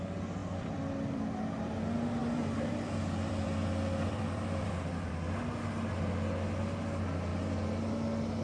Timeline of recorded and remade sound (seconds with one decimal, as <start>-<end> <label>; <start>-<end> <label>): 0.0-0.4 recorded; 0.4-1.7 remade; 1.7-2.2 recorded; 2.2-5.1 remade; 5.1-8.4 recorded

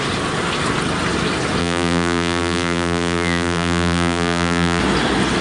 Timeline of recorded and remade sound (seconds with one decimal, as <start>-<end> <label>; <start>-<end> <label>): 0.0-1.6 recorded; 1.6-4.8 remade; 4.8-5.4 recorded

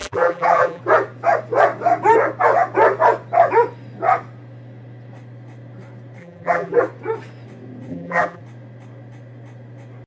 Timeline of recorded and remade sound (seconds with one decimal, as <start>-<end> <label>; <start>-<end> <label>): 0.0-0.8 remade; 0.8-6.2 recorded; 6.2-6.8 remade; 6.8-7.9 recorded; 7.9-8.4 remade; 8.4-10.1 recorded

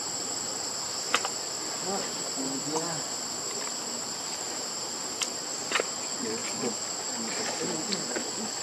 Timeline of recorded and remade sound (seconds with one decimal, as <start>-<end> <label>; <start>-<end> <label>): 0.0-8.6 recorded

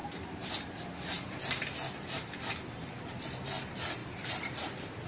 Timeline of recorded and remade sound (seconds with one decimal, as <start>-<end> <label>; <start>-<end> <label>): 0.0-4.0 recorded; 4.0-5.1 remade

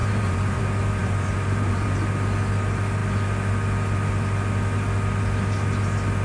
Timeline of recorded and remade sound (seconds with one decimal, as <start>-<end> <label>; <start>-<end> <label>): 0.0-0.6 remade; 0.6-1.0 recorded; 1.0-2.0 remade; 2.0-6.2 recorded

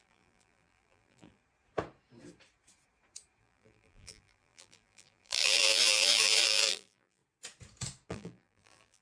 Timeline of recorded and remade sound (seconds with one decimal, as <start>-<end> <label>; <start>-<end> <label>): 0.0-1.4 remade; 1.4-3.4 recorded; 3.4-7.2 remade; 7.2-8.1 recorded; 8.1-9.0 remade